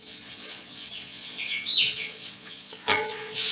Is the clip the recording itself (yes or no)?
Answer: no